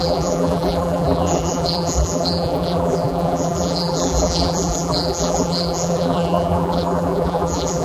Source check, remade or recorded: remade